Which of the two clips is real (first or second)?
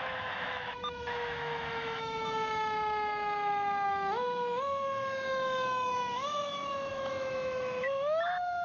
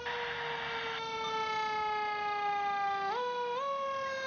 second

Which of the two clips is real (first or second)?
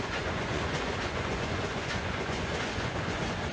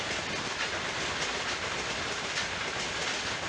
second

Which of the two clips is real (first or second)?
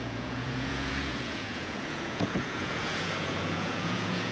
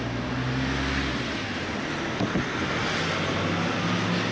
second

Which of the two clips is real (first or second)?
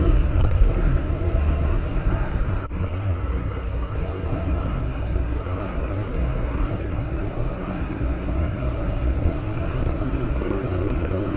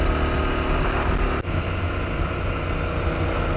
second